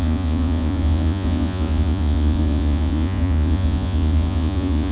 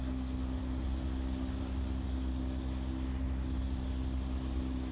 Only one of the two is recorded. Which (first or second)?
second